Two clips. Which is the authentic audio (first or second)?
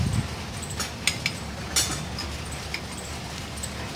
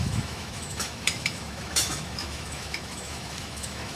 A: first